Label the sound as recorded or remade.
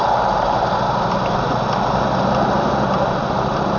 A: recorded